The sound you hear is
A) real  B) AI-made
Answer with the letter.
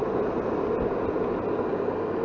A